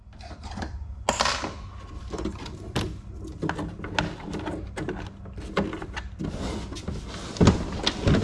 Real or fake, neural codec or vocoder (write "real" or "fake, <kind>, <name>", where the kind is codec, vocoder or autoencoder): real